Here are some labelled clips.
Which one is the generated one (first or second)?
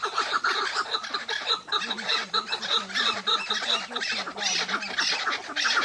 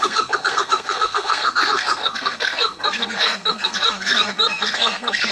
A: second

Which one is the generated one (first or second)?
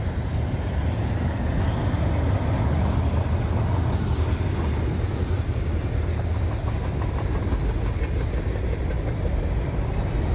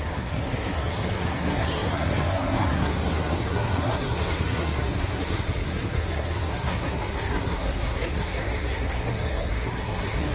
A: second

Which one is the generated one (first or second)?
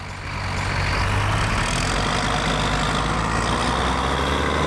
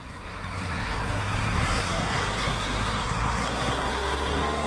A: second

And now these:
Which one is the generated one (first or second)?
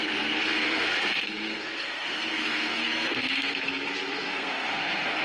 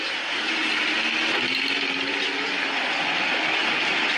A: first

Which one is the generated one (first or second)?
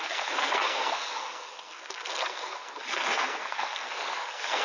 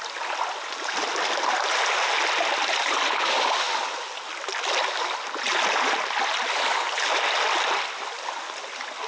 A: first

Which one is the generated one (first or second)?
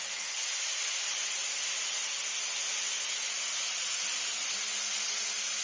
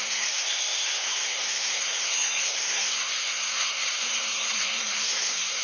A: second